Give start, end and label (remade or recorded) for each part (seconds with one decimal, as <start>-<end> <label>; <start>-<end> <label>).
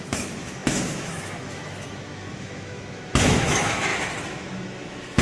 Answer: 0.0-5.2 remade